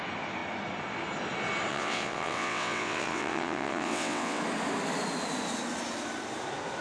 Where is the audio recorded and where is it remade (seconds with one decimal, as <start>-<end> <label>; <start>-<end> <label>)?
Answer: 0.0-1.7 recorded; 1.7-4.4 remade; 4.4-6.8 recorded